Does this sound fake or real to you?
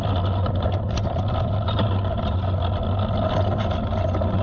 real